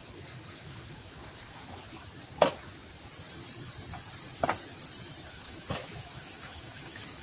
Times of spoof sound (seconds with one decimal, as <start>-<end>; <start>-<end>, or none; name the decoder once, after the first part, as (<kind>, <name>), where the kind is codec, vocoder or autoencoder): 0.5-1.8 (autoencoder, DAC-VAE); 5.3-7.2